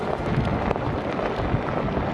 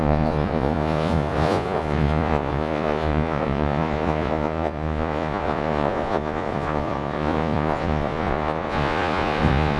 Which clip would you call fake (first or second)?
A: second